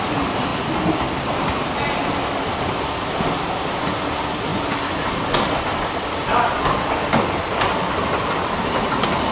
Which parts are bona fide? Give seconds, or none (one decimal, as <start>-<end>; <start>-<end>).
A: 0.0-9.3